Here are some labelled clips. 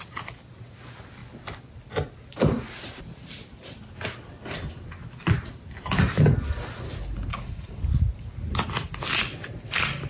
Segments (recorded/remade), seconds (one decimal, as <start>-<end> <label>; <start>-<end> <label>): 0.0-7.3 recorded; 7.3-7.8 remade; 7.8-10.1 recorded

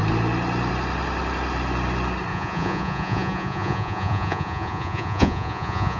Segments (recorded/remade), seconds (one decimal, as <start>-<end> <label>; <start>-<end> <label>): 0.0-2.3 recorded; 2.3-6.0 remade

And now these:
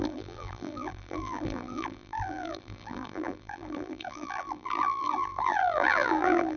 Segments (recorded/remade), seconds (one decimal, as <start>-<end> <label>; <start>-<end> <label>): 0.0-6.6 remade

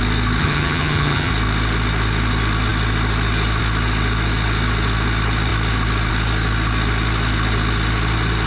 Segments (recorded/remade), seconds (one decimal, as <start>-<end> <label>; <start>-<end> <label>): 0.0-0.4 recorded; 0.4-1.3 remade; 1.3-8.5 recorded

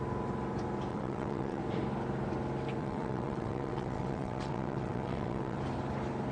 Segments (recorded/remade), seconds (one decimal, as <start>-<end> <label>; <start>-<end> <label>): 0.0-0.9 recorded; 0.9-1.6 remade; 1.6-2.8 recorded; 2.8-5.6 remade; 5.6-6.3 recorded

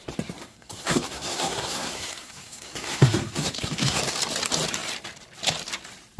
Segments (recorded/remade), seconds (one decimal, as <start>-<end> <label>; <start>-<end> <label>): 0.0-0.4 recorded; 0.4-4.0 remade; 4.0-6.2 recorded